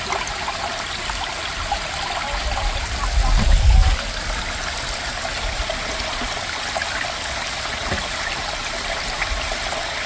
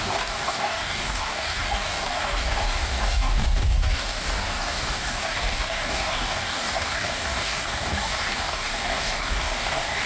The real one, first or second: first